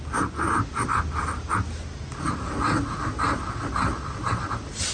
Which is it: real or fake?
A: real